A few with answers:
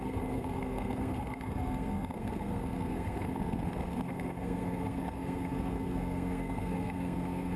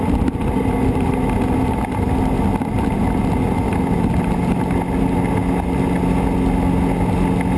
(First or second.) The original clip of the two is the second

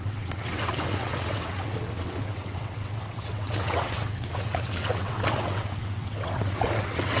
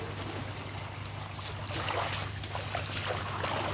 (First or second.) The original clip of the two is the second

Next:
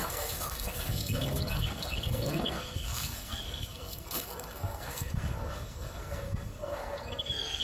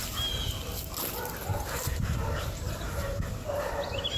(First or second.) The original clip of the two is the second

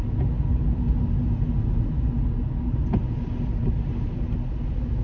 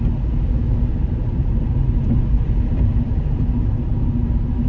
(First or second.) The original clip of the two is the first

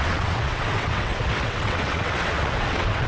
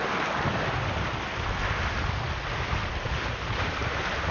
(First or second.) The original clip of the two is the second